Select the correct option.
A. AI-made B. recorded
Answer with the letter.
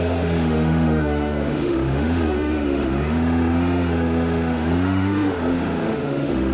A